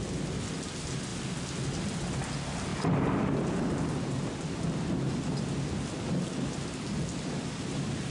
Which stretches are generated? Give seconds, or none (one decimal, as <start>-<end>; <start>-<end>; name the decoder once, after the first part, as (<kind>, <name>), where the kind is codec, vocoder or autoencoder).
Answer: none